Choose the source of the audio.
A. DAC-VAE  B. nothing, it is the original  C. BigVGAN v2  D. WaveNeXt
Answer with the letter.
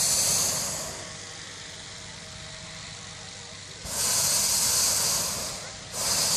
B